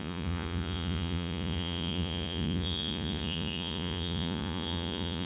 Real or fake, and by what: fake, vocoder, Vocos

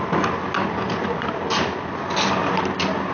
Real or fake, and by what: real